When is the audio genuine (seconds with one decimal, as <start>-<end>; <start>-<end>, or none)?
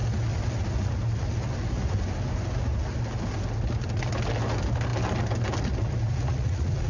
0.0-6.1